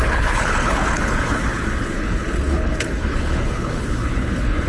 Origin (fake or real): fake